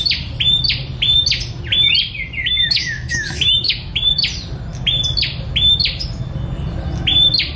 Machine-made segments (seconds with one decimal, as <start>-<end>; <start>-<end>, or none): 2.4-4.1